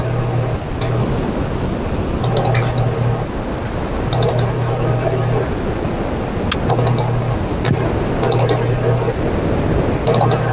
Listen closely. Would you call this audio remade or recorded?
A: recorded